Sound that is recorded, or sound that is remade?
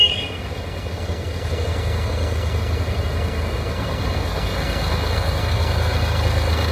remade